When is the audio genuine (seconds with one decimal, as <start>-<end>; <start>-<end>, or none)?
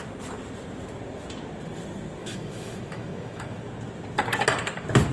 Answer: 0.0-2.2; 3.6-5.1